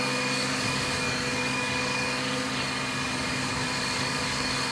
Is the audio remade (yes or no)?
yes